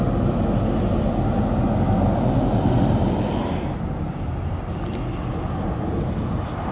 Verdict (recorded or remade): recorded